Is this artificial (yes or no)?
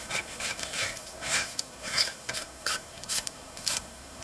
yes